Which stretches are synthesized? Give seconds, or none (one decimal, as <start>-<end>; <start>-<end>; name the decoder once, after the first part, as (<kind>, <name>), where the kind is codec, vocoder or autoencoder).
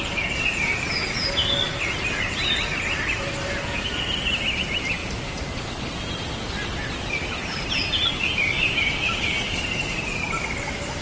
none